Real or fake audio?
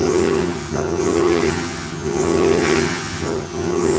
fake